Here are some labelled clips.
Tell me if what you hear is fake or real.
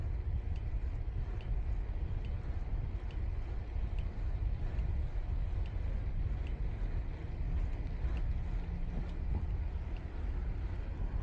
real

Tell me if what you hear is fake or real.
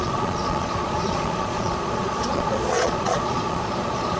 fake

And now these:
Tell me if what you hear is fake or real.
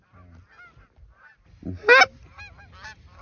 real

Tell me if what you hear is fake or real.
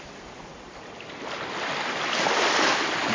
fake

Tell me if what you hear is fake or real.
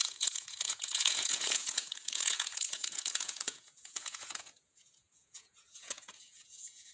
fake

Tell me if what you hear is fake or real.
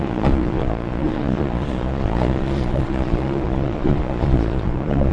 fake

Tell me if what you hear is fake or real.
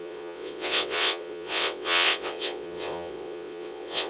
fake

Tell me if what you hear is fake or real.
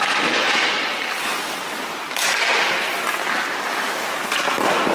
real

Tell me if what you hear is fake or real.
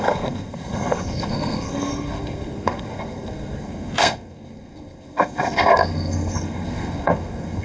fake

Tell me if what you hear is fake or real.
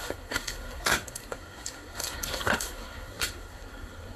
fake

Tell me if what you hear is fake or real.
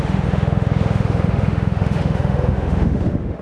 fake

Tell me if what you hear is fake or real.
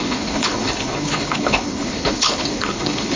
fake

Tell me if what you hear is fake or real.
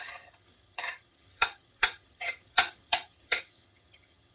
fake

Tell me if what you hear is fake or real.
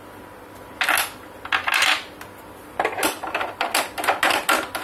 real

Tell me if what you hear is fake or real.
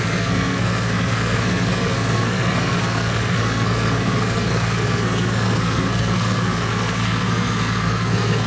fake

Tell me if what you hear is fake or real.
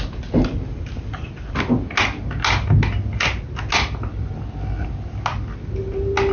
real